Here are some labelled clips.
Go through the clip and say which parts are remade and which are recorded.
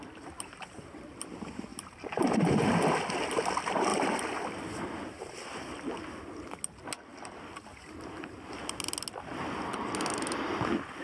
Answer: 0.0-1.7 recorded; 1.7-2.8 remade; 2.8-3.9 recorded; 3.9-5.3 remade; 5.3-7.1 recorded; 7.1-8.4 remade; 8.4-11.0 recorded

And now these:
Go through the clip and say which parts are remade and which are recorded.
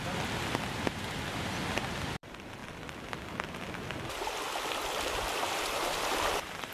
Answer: 0.0-2.6 remade; 2.6-5.7 recorded; 5.7-6.7 remade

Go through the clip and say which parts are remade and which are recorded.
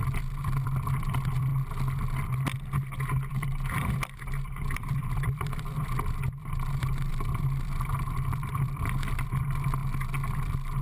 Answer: 0.0-1.5 remade; 1.5-3.3 recorded; 3.3-9.8 remade; 9.8-10.4 recorded; 10.4-10.8 remade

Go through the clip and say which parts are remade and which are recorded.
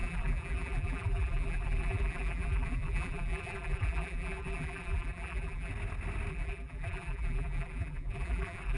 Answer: 0.0-5.7 remade; 5.7-6.3 recorded; 6.3-8.8 remade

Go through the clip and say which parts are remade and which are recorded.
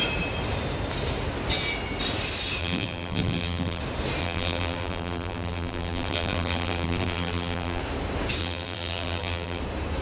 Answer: 0.0-2.6 recorded; 2.6-3.8 remade; 3.8-4.2 recorded; 4.2-7.8 remade; 7.8-8.4 recorded; 8.4-9.6 remade; 9.6-10.0 recorded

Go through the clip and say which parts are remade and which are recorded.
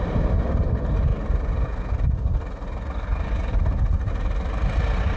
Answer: 0.0-5.2 recorded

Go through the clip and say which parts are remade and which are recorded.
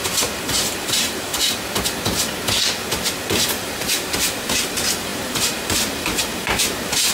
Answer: 0.0-1.3 remade; 1.3-3.5 recorded; 3.5-7.1 remade